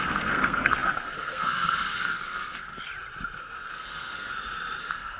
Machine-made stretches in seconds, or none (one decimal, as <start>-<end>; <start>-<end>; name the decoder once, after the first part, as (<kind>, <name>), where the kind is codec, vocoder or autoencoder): 0.0-2.9 (codec, SNAC); 3.4-4.3; 4.8-5.2